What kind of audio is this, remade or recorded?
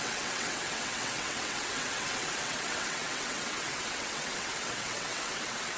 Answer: remade